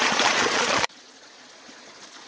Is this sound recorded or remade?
remade